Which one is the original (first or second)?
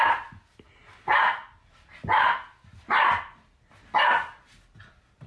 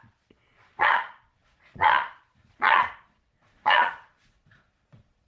first